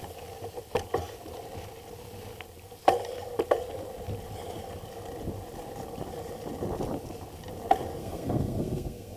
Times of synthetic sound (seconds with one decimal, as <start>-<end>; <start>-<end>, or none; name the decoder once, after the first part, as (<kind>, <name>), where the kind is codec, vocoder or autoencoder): 8.0-9.2 (codec, SNAC)